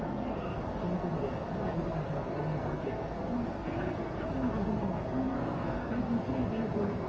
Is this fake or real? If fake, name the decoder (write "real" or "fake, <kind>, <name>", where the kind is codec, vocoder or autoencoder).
fake, codec, SNAC